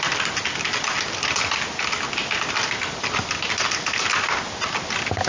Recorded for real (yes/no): yes